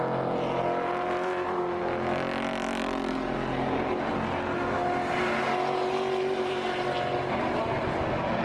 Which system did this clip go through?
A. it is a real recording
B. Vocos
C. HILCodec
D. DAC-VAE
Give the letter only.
A